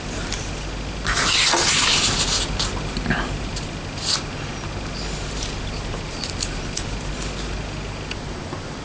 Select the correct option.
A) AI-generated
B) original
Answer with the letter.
B